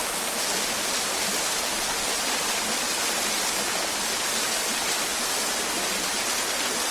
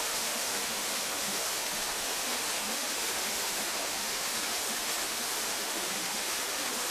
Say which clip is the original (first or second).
first